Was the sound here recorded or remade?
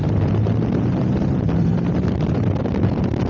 recorded